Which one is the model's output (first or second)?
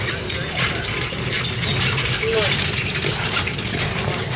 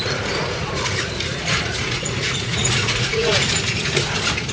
second